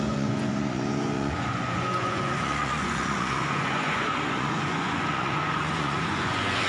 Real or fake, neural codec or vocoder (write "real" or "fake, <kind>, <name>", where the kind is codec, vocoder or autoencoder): fake, vocoder, Vocos